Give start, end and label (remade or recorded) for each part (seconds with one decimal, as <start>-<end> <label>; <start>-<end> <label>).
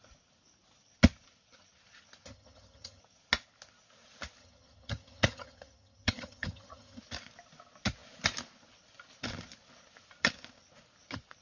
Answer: 0.0-2.3 recorded; 2.3-3.0 remade; 3.0-4.4 recorded; 4.4-7.0 remade; 7.0-11.4 recorded